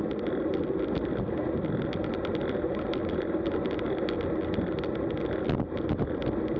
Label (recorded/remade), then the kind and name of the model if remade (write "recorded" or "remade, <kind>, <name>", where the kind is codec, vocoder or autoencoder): recorded